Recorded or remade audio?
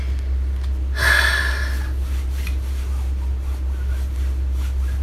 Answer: recorded